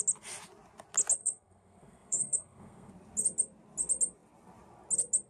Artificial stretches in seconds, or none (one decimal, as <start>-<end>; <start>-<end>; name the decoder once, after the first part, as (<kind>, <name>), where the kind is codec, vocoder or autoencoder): 1.2-2.9 (codec, SNAC)